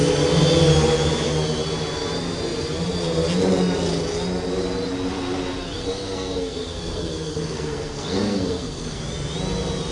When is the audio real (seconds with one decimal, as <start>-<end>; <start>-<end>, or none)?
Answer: 0.0-5.8; 9.0-9.9